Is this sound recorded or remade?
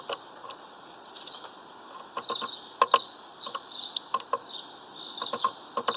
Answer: recorded